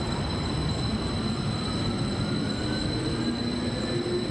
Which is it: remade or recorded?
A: recorded